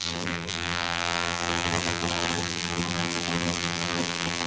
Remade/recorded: remade